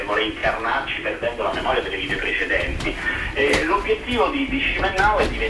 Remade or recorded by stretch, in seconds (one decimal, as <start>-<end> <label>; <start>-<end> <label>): 0.0-5.5 recorded